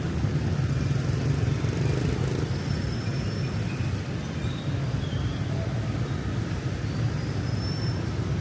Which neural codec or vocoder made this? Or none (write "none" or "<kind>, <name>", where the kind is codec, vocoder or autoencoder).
none